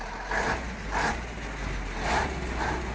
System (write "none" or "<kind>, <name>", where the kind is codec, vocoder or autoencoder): none